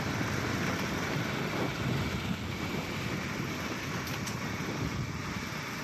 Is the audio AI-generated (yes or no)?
no